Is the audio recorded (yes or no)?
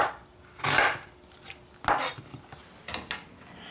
yes